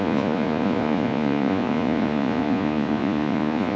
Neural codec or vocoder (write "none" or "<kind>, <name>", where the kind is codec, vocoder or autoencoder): vocoder, Vocos